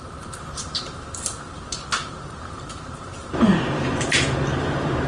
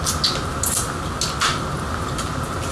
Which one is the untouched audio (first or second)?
second